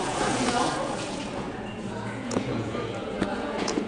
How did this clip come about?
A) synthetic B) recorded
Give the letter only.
A